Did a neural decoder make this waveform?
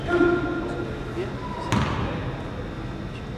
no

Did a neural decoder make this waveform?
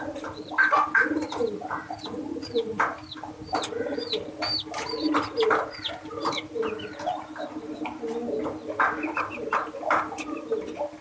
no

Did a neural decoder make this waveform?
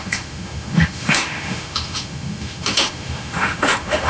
yes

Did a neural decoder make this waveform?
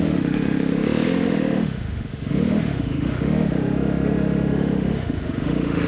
yes